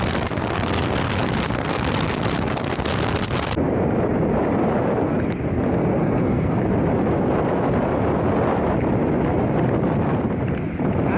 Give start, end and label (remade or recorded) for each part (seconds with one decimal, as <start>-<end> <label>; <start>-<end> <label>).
0.0-6.0 recorded; 6.0-6.6 remade; 6.6-11.2 recorded